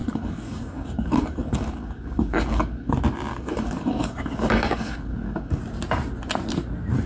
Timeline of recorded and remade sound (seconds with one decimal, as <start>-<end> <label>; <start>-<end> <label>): 0.0-2.9 remade; 2.9-3.3 recorded; 3.3-5.6 remade; 5.6-7.1 recorded